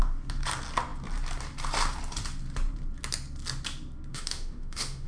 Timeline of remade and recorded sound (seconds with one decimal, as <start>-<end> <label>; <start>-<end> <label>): 0.0-4.1 recorded; 4.1-5.1 remade